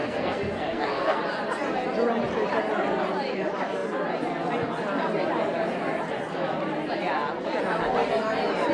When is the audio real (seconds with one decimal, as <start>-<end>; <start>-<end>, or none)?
1.2-8.7